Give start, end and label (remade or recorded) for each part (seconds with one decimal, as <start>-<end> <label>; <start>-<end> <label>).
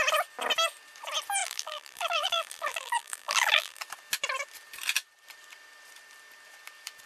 0.0-1.4 recorded; 1.4-3.8 remade; 3.8-7.1 recorded